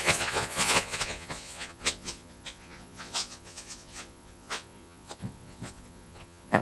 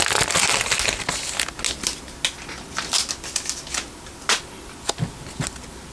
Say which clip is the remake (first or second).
first